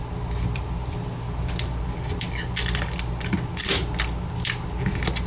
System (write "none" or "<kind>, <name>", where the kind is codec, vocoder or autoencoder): none